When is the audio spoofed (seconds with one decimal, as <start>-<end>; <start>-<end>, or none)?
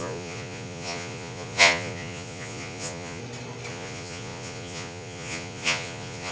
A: 0.0-3.2; 3.7-6.3